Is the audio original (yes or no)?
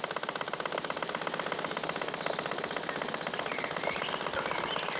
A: yes